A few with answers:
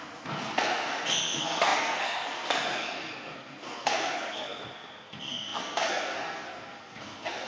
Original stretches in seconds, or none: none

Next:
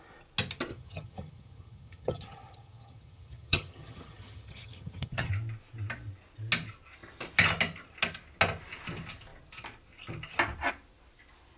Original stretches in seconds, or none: 0.0-0.7; 5.3-11.6

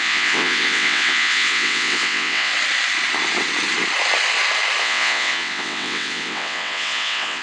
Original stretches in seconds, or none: 2.5-4.8

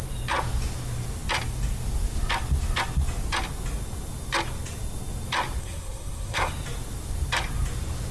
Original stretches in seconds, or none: 0.0-5.6; 6.5-8.1

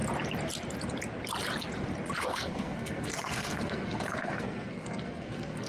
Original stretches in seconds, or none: 0.0-2.2

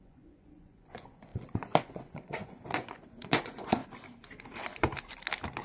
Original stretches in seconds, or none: 3.8-5.6

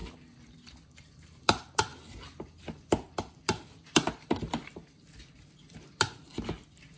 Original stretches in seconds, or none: 1.9-3.3